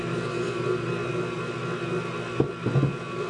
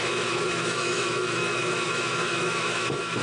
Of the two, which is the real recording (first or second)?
first